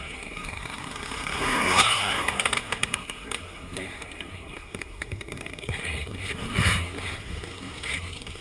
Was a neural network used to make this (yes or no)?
yes